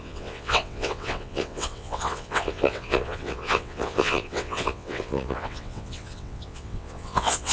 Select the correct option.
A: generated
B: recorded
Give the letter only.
A